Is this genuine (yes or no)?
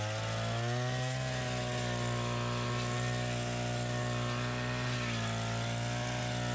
yes